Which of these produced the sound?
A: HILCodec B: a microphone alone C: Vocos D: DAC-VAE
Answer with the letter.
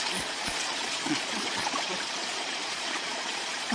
C